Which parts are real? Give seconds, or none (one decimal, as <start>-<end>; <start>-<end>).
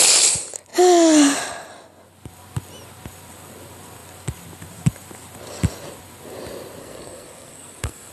0.0-6.8